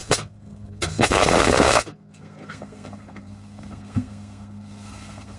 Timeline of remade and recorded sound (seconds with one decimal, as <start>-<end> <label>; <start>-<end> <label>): 0.0-5.4 remade